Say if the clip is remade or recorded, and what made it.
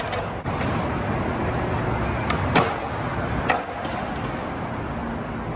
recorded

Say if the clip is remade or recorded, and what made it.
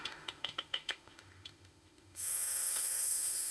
remade, autoencoder, DAC-VAE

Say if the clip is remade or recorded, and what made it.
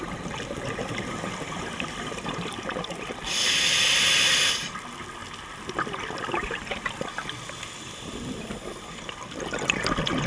recorded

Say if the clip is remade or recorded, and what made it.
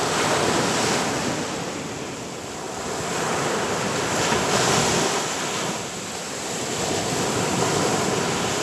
recorded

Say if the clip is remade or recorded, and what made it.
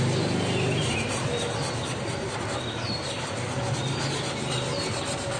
recorded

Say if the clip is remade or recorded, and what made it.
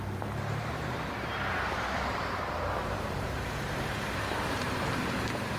remade, vocoder, BigVGAN v2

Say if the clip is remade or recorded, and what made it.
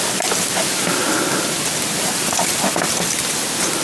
recorded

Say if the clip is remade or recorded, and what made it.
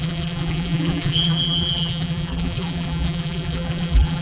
remade, vocoder, BigVGAN v2